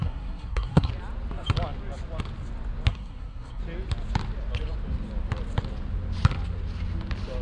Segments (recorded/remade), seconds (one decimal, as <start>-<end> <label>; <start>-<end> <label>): 0.0-0.9 remade; 0.9-2.9 recorded; 2.9-3.6 remade; 3.6-7.4 recorded